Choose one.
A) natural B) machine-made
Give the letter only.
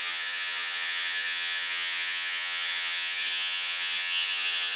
B